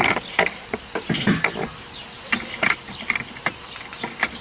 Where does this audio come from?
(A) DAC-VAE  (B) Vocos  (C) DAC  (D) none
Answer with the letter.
D